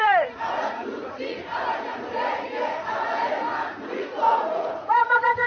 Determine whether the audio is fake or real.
fake